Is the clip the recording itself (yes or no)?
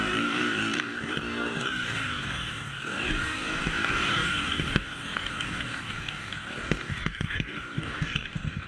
no